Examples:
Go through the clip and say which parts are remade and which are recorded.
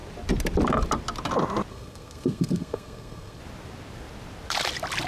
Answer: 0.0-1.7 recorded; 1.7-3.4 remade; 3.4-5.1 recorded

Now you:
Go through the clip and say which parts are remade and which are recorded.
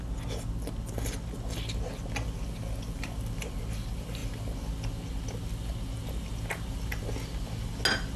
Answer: 0.0-8.2 recorded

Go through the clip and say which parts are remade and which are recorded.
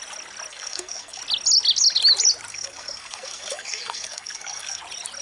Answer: 0.0-0.5 recorded; 0.5-1.2 remade; 1.2-2.5 recorded; 2.5-4.8 remade; 4.8-5.2 recorded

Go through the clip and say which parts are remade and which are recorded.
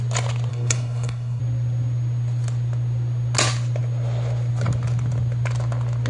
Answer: 0.0-0.5 recorded; 0.5-1.4 remade; 1.4-6.1 recorded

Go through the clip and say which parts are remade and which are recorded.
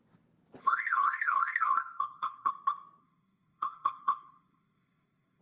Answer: 0.0-0.6 recorded; 0.6-2.5 remade; 2.5-3.0 recorded; 3.0-5.4 remade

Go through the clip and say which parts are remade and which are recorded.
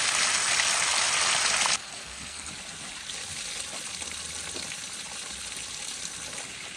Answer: 0.0-1.8 recorded; 1.8-2.5 remade; 2.5-6.8 recorded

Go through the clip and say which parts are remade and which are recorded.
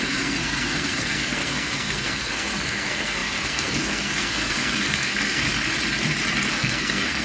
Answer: 0.0-5.5 remade; 5.5-6.5 recorded; 6.5-7.2 remade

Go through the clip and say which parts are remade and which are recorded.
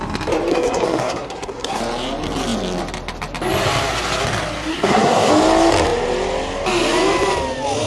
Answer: 0.0-0.5 recorded; 0.5-1.8 remade; 1.8-4.7 recorded; 4.7-5.3 remade; 5.3-7.9 recorded